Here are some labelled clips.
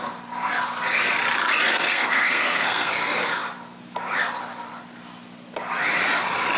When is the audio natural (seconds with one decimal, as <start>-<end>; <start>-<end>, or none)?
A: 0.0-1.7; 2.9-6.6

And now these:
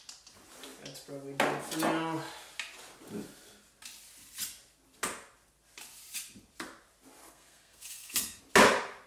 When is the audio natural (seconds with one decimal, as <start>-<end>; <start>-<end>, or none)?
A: 0.0-7.2; 8.4-9.1

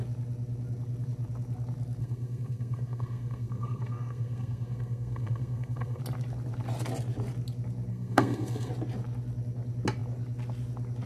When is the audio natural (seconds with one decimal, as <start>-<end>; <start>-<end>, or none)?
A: 0.0-2.0; 6.0-7.9; 8.7-11.1